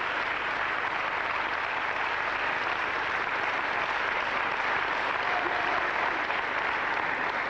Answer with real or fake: real